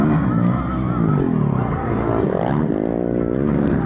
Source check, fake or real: real